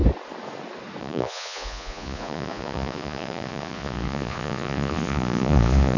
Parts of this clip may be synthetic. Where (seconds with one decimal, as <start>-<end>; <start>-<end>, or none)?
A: 1.0-6.0